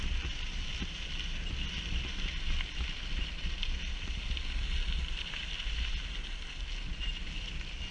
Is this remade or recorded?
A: recorded